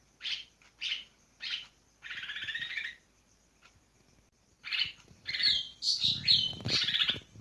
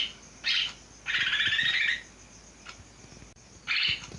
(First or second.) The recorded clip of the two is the second